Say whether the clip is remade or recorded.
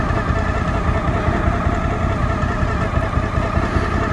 recorded